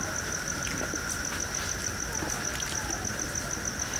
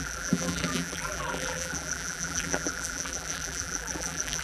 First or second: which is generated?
second